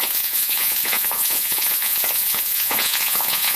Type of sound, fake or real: fake